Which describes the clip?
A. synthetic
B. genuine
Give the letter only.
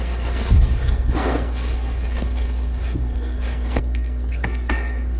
A